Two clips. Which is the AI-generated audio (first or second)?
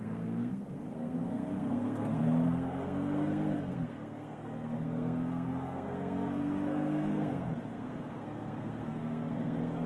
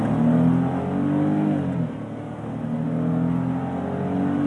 first